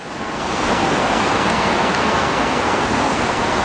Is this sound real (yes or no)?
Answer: no